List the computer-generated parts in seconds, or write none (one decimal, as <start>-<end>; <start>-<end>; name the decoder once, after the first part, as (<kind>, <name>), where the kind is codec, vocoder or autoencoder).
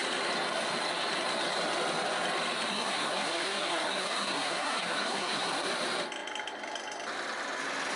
2.7-5.7 (codec, SNAC)